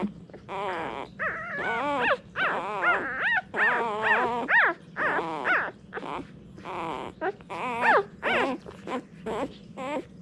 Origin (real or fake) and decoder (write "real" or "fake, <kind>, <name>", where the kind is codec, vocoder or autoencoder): real